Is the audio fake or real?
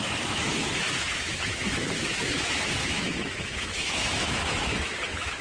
fake